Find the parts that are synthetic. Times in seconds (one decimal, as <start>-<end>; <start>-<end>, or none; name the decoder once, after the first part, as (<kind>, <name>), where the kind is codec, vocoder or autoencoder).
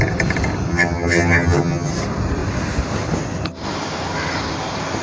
0.7-1.9 (vocoder, HiFi-GAN)